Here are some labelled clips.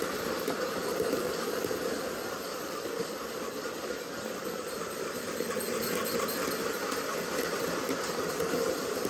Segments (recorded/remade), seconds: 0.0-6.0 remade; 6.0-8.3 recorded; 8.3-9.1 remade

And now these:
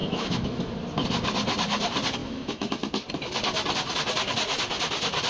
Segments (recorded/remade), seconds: 0.0-0.7 remade; 0.7-2.2 recorded; 2.2-2.7 remade; 2.7-5.3 recorded

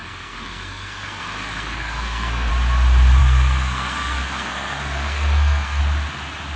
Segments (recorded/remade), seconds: 0.0-2.5 remade; 2.5-3.2 recorded; 3.2-5.8 remade; 5.8-6.6 recorded

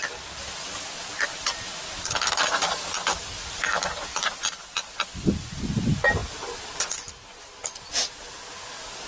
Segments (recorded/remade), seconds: 0.0-9.1 recorded